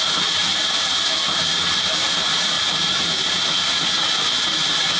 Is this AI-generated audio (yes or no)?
no